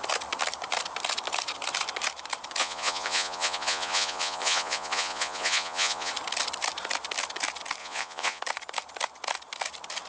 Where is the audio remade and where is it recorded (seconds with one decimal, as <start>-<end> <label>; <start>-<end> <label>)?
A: 0.0-2.6 recorded; 2.6-6.1 remade; 6.1-7.8 recorded; 7.8-8.4 remade; 8.4-10.1 recorded